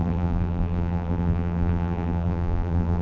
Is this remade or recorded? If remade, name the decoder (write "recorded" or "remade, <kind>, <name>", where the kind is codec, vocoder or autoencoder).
remade, vocoder, BigVGAN v2